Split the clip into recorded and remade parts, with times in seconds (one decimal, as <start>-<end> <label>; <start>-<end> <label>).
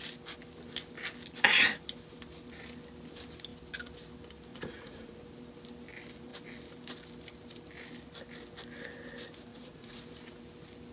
0.0-4.5 recorded; 4.5-5.1 remade; 5.1-9.5 recorded; 9.5-10.0 remade; 10.0-10.9 recorded